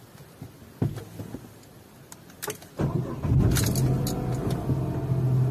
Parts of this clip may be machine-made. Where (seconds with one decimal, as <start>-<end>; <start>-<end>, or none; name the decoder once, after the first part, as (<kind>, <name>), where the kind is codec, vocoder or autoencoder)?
none